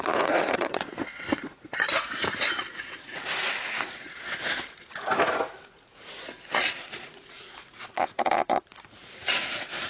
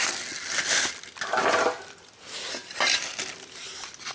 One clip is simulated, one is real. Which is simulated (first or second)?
first